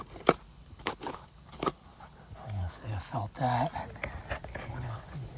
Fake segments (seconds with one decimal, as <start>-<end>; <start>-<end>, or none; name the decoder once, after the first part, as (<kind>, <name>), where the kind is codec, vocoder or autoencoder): 0.5-3.3 (codec, HILCodec); 4.5-5.4